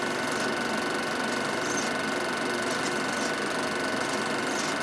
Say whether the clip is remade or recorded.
recorded